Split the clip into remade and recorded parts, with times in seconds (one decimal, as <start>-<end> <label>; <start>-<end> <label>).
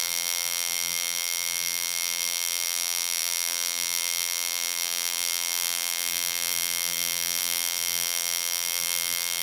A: 0.0-9.4 remade